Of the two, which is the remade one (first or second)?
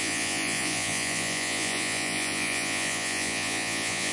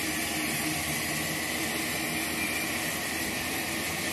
first